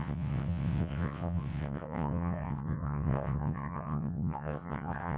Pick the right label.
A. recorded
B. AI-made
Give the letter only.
B